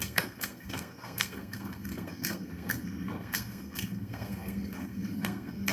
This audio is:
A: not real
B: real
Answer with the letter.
A